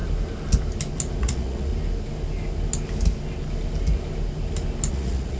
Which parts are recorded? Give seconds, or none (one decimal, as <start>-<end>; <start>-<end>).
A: 0.0-1.2; 1.7-4.9